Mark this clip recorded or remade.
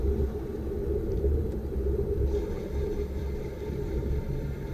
remade